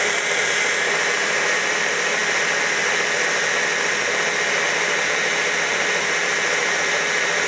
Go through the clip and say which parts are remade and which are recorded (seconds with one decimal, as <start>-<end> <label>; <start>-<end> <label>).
0.0-2.2 remade; 2.2-4.7 recorded; 4.7-7.5 remade